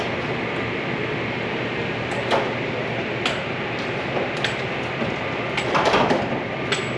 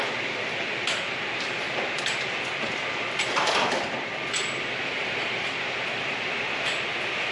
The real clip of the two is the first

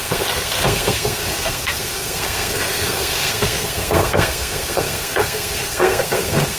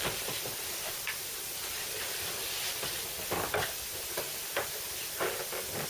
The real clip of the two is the second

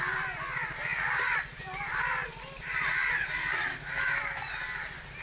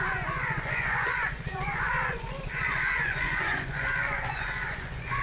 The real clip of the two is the first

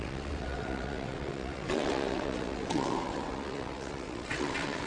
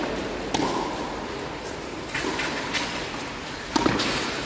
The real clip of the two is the second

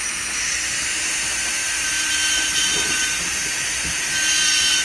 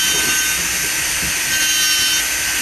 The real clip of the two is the second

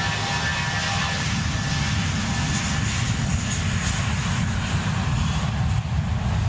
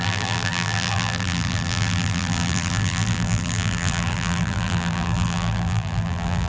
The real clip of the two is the first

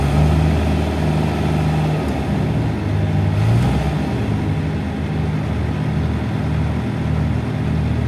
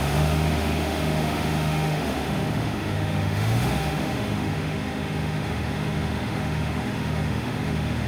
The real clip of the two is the first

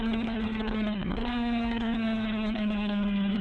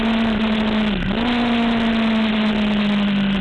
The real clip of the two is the second